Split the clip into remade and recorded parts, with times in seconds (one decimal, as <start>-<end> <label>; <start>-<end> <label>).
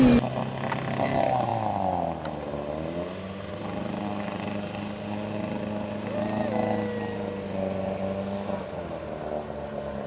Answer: 0.0-10.1 recorded